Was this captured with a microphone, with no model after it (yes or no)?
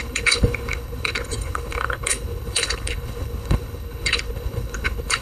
no